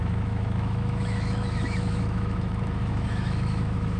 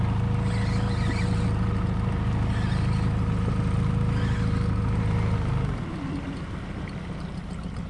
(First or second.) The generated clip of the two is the first